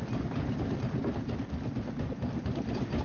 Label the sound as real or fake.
real